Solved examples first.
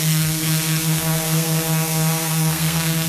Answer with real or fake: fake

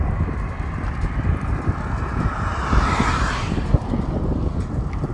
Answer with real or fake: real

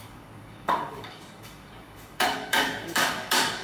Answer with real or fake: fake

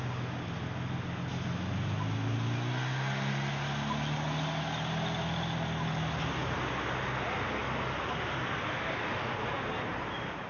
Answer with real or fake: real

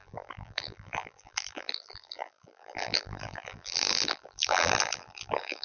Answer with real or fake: fake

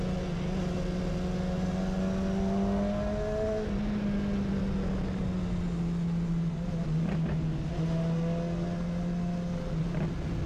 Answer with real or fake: real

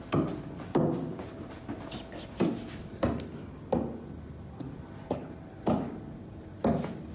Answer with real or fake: real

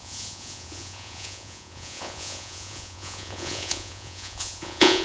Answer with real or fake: fake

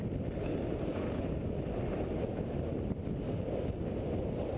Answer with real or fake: real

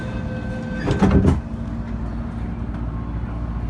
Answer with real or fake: real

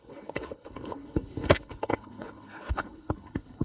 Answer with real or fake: fake